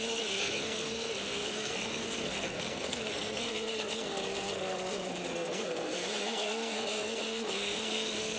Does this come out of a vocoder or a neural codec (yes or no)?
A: yes